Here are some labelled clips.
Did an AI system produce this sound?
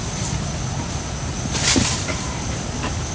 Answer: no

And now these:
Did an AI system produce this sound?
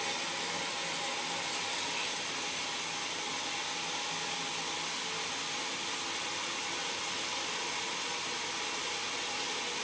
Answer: no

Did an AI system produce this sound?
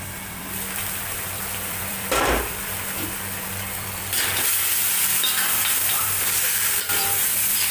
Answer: yes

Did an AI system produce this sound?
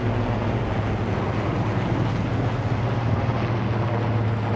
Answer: no